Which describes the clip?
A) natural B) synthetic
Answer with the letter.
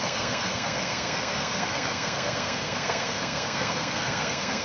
B